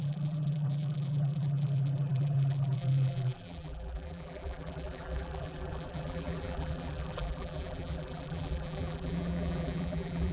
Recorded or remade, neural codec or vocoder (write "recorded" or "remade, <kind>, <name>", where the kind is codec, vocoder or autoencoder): remade, vocoder, BigVGAN v2